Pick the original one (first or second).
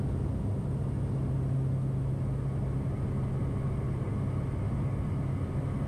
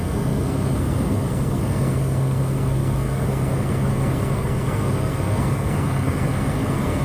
first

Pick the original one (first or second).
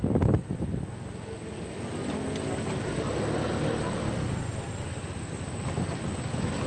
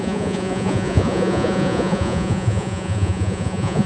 first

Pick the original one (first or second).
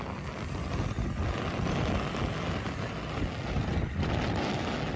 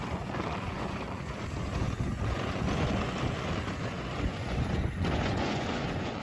first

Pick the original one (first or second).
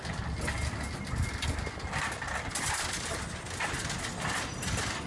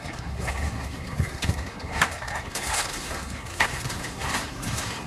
first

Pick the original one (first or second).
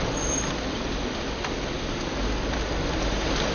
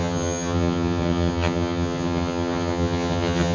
first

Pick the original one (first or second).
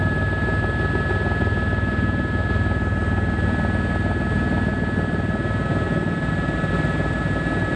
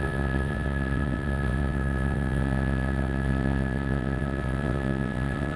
first